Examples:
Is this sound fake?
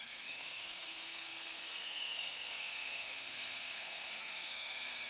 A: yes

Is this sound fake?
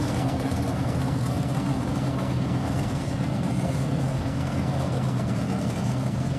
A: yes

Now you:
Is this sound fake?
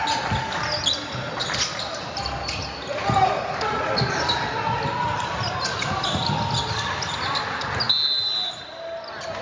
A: no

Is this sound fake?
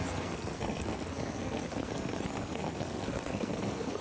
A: yes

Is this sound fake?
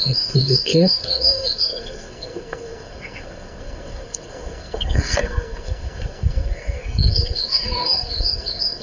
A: yes